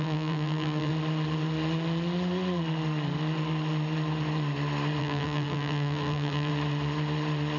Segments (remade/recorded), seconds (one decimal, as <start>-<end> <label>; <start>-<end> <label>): 0.0-0.9 remade; 0.9-5.0 recorded; 5.0-6.5 remade; 6.5-7.6 recorded